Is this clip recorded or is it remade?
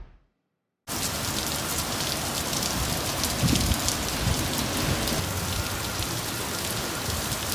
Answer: recorded